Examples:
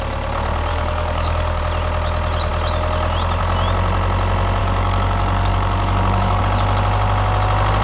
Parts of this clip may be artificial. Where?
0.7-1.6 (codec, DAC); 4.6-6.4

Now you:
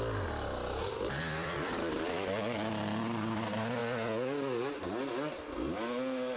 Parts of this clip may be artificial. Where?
none

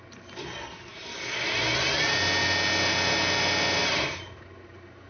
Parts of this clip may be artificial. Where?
none